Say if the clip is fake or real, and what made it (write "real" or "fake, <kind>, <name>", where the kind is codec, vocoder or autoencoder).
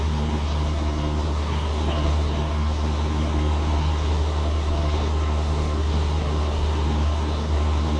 fake, codec, SNAC